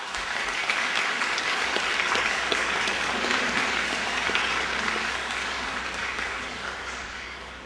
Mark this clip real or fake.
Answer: fake